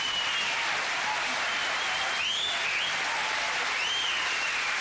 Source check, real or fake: real